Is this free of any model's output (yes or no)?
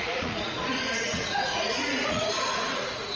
no